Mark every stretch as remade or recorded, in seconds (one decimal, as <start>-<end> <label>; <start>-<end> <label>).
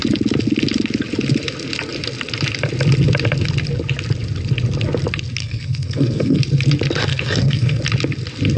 0.0-5.4 recorded; 5.4-6.4 remade; 6.4-7.1 recorded; 7.1-7.8 remade; 7.8-8.6 recorded